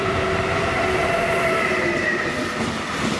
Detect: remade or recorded remade